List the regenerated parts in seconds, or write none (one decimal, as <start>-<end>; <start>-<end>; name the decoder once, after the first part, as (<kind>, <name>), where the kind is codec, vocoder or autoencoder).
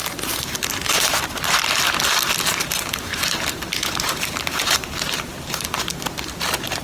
0.0-1.6 (vocoder, BigVGAN v2); 3.1-5.3